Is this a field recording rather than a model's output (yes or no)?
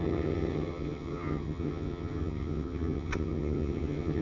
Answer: no